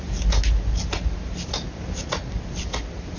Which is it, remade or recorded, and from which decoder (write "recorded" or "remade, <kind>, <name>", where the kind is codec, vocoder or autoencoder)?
recorded